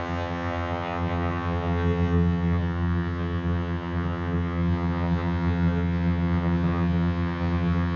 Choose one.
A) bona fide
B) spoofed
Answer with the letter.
B